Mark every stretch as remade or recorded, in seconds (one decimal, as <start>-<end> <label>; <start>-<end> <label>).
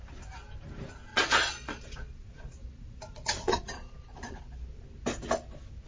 0.0-1.1 recorded; 1.1-4.4 remade; 4.4-5.9 recorded